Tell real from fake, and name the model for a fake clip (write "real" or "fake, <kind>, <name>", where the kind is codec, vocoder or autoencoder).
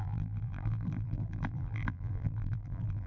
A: fake, vocoder, BigVGAN v2